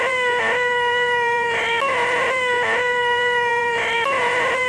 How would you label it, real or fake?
fake